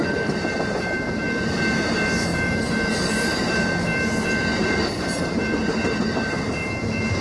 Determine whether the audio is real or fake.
fake